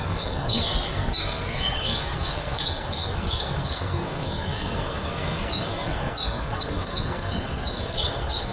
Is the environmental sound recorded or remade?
remade